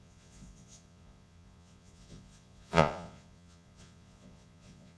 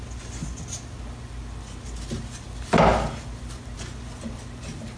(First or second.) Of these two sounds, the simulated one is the first